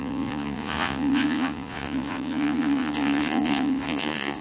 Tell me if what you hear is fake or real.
fake